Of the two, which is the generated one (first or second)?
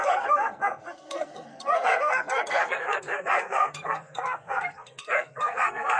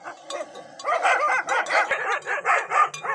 first